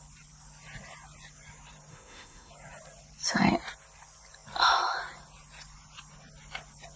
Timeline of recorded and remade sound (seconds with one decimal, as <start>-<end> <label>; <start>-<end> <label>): 0.0-1.9 recorded; 1.9-2.5 remade; 2.5-7.0 recorded